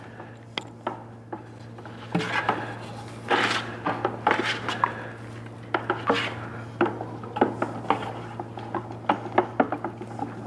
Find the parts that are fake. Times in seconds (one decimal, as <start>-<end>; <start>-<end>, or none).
none